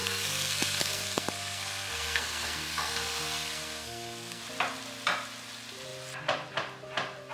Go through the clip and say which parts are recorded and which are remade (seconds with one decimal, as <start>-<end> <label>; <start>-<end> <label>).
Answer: 0.0-4.4 remade; 4.4-7.3 recorded